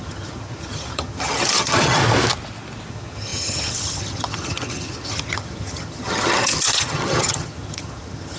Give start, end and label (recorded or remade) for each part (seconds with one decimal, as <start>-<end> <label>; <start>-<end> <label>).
0.0-2.0 remade; 2.0-2.9 recorded; 2.9-8.4 remade